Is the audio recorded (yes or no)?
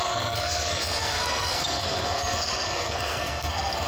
no